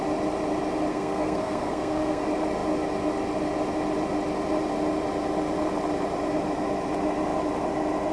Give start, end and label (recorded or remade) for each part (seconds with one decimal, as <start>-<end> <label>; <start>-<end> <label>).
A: 0.0-0.9 recorded; 0.9-2.2 remade; 2.2-8.1 recorded